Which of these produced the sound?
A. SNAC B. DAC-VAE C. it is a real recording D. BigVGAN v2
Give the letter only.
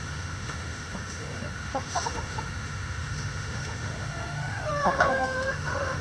B